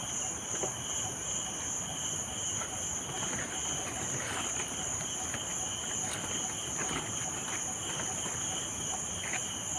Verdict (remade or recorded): recorded